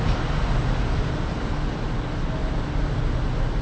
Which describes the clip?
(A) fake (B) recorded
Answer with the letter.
B